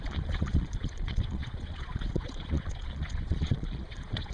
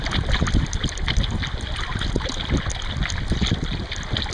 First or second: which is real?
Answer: second